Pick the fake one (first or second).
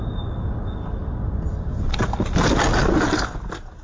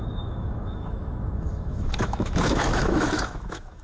second